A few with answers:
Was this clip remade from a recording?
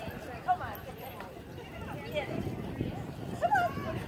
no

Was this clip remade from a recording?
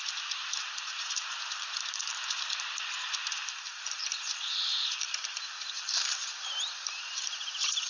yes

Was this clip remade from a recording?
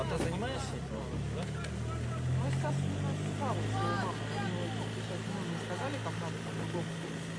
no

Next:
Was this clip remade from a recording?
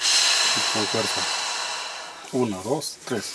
no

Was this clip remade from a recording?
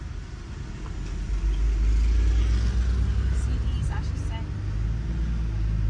no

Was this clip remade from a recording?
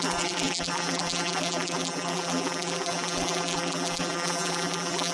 yes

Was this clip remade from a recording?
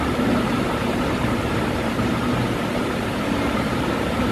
yes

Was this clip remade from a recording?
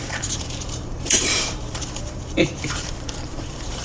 yes